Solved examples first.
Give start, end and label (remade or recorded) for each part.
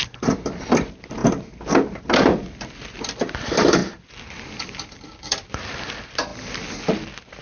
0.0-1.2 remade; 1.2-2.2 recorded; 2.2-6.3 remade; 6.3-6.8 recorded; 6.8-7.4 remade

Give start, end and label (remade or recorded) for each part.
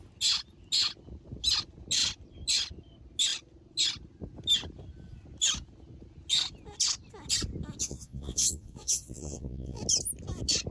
0.0-7.8 recorded; 7.8-9.8 remade; 9.8-10.7 recorded